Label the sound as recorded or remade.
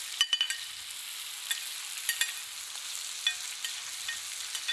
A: recorded